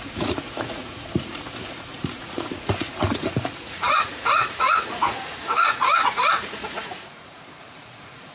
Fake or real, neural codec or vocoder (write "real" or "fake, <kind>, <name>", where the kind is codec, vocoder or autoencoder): fake, vocoder, Vocos